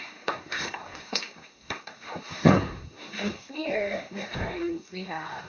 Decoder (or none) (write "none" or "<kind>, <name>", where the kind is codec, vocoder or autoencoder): codec, SNAC